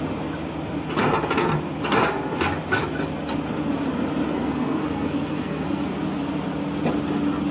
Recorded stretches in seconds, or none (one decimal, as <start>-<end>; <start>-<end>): 0.0-4.3; 5.8-7.5